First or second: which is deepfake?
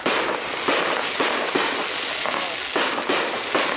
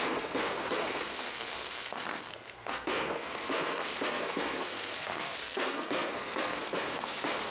second